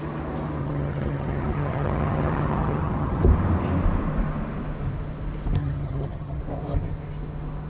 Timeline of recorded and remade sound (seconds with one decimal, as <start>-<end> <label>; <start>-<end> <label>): 0.0-0.6 recorded; 0.6-3.2 remade; 3.2-5.6 recorded; 5.6-6.4 remade; 6.4-7.7 recorded